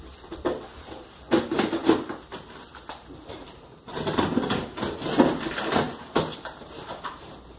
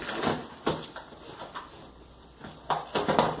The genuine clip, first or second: second